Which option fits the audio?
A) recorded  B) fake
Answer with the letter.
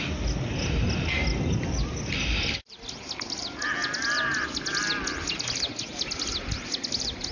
A